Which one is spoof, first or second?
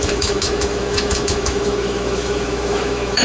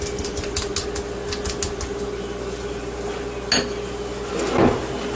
first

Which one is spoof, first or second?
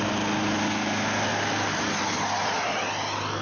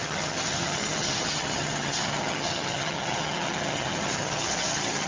second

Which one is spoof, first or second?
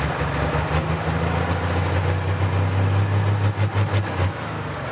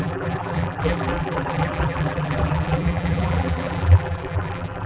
second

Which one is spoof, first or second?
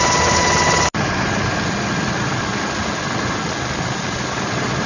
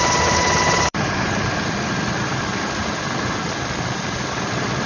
second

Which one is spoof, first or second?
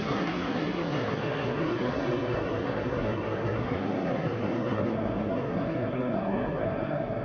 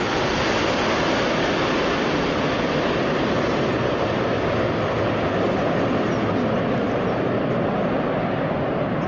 first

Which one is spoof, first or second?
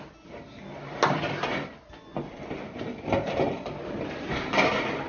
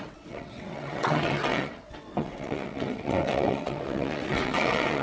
second